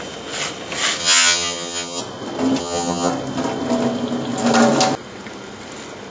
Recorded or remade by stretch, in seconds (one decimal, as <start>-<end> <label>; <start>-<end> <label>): 0.0-1.0 recorded; 1.0-2.0 remade; 2.0-2.6 recorded; 2.6-3.1 remade; 3.1-6.1 recorded